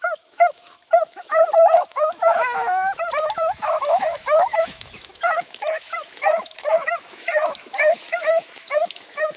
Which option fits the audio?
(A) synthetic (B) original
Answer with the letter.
A